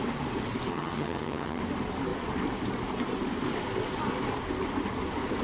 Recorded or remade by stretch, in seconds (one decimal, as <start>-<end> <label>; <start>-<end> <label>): 0.0-0.7 recorded; 0.7-1.6 remade; 1.6-5.4 recorded